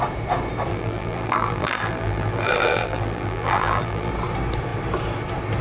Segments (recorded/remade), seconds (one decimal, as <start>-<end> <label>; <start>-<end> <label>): 0.0-0.7 recorded; 0.7-4.1 remade; 4.1-5.6 recorded